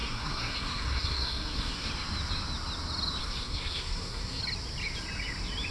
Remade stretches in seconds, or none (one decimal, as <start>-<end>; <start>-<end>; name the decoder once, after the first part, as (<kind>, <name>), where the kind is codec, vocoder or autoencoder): 0.0-1.9 (codec, SNAC); 3.2-4.4